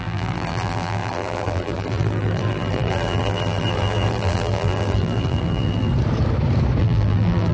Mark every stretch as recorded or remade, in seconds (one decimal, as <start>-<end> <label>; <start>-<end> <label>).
0.0-5.9 remade; 5.9-6.8 recorded; 6.8-7.5 remade